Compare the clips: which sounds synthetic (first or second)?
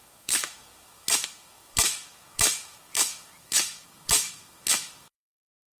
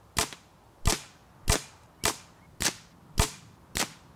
first